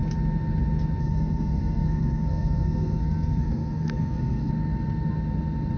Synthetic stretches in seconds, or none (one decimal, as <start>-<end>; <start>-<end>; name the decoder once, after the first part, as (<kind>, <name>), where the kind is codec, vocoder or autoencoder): 1.0-4.5 (codec, SNAC)